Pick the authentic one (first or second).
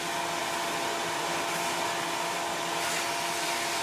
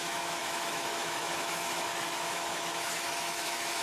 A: first